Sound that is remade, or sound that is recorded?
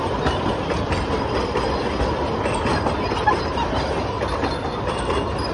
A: recorded